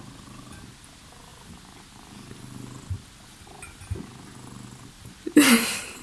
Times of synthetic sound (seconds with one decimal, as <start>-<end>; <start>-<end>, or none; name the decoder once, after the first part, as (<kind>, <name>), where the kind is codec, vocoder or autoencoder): none